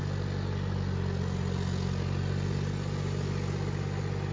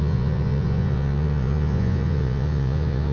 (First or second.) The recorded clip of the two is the first